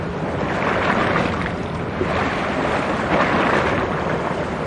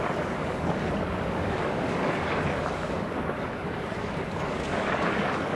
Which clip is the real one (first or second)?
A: first